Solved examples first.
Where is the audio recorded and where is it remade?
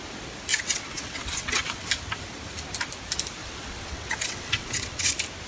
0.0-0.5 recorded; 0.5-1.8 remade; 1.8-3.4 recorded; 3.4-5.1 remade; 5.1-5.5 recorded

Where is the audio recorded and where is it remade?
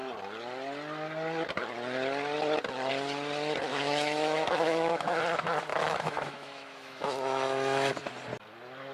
0.0-3.7 recorded; 3.7-5.2 remade; 5.2-5.7 recorded; 5.7-7.9 remade; 7.9-8.9 recorded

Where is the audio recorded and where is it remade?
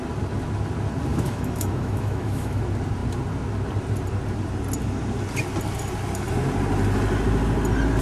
0.0-1.1 recorded; 1.1-2.6 remade; 2.6-8.0 recorded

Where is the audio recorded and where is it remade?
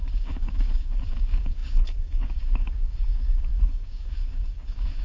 0.0-5.0 remade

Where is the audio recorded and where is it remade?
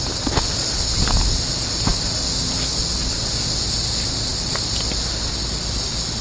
0.0-6.2 recorded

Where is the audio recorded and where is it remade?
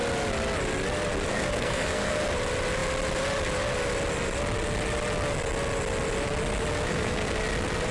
0.0-1.3 recorded; 1.3-2.2 remade; 2.2-6.9 recorded; 6.9-7.4 remade; 7.4-7.9 recorded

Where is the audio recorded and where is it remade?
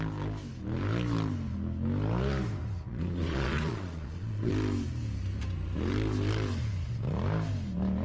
0.0-2.9 recorded; 2.9-4.5 remade; 4.5-8.0 recorded